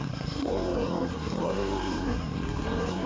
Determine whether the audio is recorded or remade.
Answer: remade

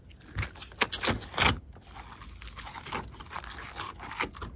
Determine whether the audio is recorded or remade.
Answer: recorded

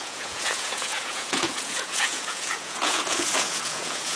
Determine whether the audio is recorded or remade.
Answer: remade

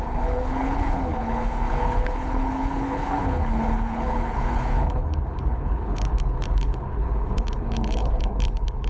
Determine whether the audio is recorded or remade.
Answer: remade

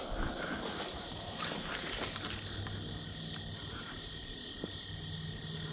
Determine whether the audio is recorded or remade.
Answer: recorded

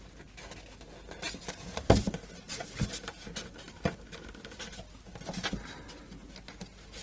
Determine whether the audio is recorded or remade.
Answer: recorded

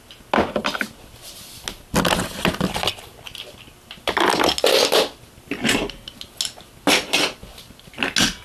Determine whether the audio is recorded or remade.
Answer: recorded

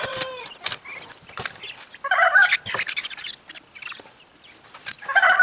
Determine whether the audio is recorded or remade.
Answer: recorded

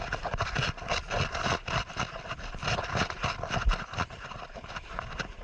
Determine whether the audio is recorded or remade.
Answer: recorded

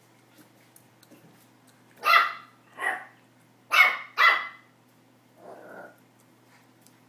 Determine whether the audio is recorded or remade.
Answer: recorded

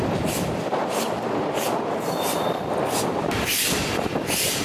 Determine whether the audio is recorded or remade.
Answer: remade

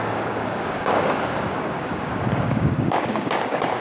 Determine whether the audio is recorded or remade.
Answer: remade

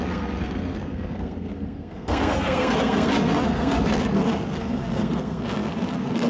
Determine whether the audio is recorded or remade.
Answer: remade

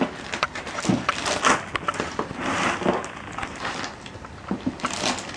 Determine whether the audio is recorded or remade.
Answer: recorded